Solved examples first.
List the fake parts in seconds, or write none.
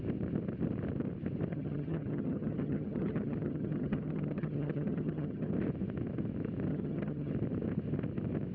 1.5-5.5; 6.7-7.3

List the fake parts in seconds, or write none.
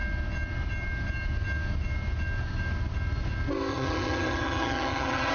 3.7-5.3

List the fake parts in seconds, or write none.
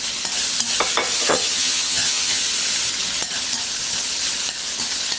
1.2-2.4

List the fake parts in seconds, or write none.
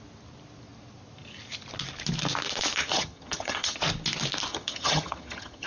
2.8-3.8; 4.5-5.7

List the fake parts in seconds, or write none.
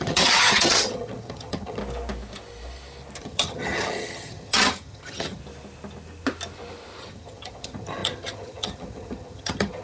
0.0-1.8; 3.2-5.4; 7.0-9.8